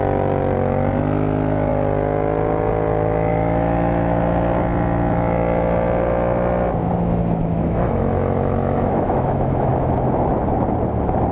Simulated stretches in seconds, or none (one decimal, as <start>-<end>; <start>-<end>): 3.3-4.2; 7.4-9.7